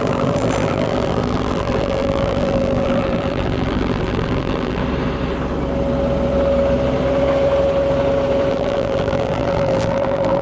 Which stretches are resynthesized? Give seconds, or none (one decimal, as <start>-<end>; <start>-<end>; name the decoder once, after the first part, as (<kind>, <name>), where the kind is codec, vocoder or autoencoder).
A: 0.0-4.8 (vocoder, BigVGAN v2); 8.5-10.4